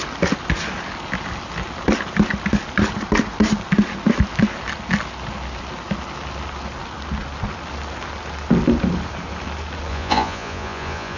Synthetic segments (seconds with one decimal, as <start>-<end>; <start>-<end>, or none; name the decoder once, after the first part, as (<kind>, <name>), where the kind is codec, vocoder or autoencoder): 9.9-11.2 (vocoder, Vocos)